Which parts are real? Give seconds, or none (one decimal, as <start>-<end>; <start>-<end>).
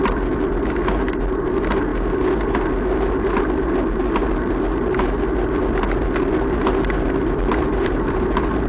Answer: 0.0-8.7